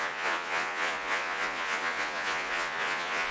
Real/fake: fake